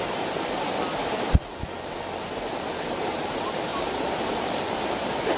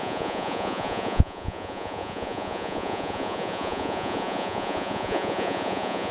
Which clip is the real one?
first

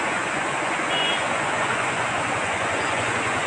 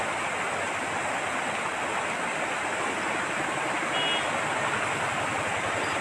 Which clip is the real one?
second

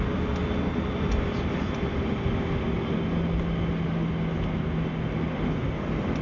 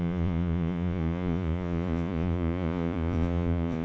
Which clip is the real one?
first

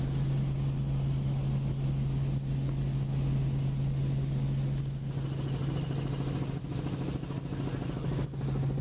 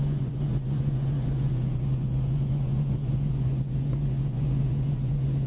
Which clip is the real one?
first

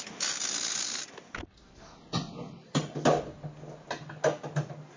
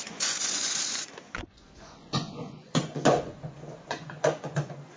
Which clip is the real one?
first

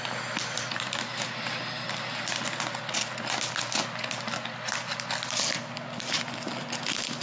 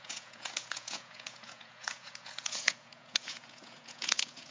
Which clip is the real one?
first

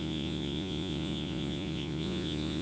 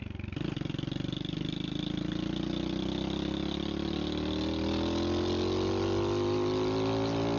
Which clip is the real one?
second